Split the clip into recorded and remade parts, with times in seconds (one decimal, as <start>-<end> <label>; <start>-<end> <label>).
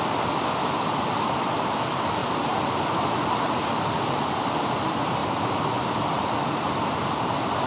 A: 0.0-2.2 remade; 2.2-4.4 recorded; 4.4-7.7 remade